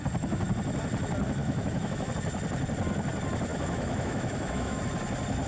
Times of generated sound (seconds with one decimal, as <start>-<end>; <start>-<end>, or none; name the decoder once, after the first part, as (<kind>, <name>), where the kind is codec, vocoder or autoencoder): 1.4-2.1 (autoencoder, DAC-VAE); 3.5-4.8